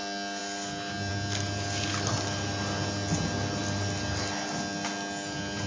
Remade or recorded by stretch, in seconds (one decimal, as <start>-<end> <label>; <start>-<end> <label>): 0.0-5.7 recorded